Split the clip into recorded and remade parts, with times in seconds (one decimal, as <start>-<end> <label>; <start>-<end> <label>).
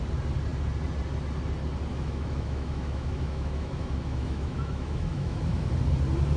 0.0-1.9 recorded; 1.9-5.7 remade; 5.7-6.4 recorded